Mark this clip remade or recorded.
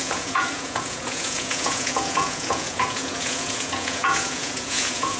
remade